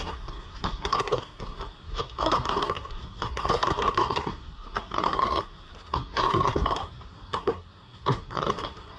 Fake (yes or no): yes